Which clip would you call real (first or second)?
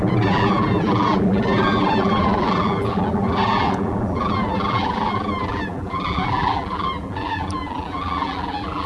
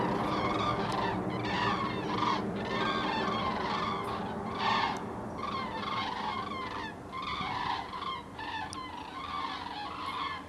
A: second